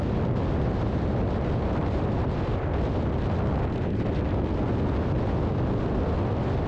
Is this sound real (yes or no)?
yes